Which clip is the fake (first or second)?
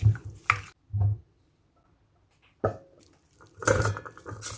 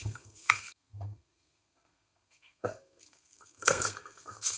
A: second